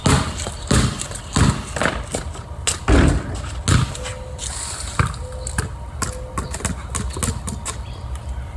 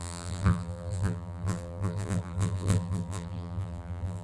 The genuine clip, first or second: first